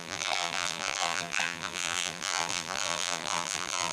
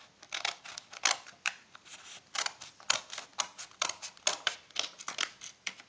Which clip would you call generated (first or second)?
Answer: first